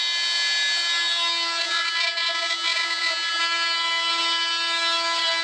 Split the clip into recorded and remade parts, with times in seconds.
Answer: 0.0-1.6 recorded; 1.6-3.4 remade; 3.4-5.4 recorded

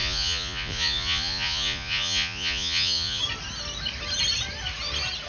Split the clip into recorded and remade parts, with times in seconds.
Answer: 0.0-3.2 remade; 3.2-5.3 recorded

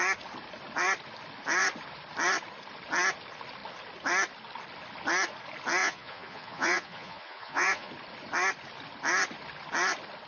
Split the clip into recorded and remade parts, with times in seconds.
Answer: 0.0-5.8 recorded; 5.8-7.9 remade; 7.9-10.3 recorded

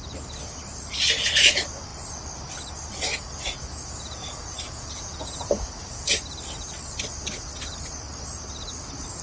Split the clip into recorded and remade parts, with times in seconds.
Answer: 0.0-3.1 recorded; 3.1-6.2 remade; 6.2-9.2 recorded

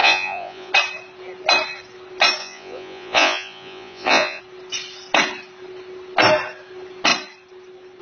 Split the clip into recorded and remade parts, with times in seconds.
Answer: 0.0-0.7 remade; 0.7-2.4 recorded; 2.4-4.4 remade; 4.4-8.0 recorded

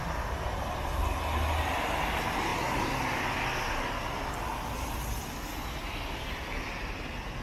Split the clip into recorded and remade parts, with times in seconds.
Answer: 0.0-7.4 recorded

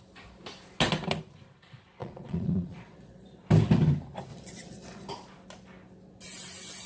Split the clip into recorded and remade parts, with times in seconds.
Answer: 0.0-2.0 recorded; 2.0-3.4 remade; 3.4-4.3 recorded; 4.3-5.1 remade; 5.1-6.9 recorded

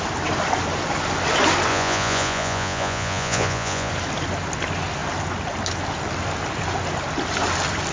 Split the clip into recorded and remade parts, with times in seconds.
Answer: 0.0-1.7 recorded; 1.7-3.9 remade; 3.9-7.9 recorded